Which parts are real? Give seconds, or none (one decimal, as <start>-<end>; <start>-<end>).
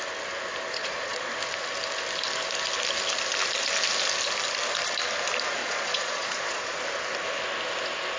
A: 0.0-0.8; 1.3-5.6; 6.8-8.2